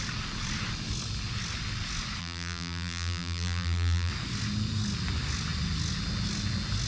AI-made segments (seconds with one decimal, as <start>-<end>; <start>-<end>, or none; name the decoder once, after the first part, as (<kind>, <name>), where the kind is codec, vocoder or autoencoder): 2.2-4.1 (vocoder, BigVGAN v2)